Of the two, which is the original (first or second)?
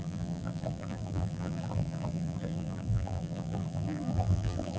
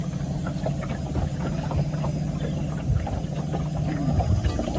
second